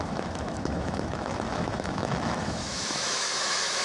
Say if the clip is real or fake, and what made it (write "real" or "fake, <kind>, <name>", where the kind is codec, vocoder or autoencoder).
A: fake, autoencoder, DAC-VAE